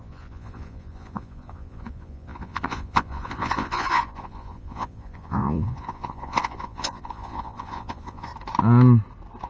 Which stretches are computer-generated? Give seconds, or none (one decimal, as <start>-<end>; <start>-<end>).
0.0-8.3